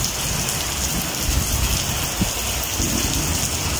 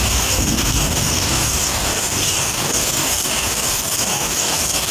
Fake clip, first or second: second